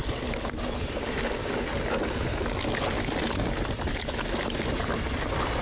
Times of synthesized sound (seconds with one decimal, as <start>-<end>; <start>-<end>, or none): none

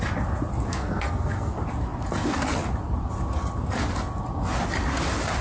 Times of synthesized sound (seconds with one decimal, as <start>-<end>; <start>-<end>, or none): 0.7-1.5

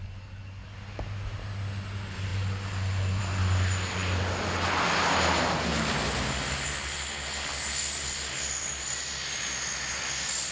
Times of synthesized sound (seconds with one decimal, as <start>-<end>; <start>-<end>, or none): none